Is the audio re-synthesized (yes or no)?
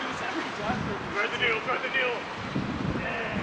no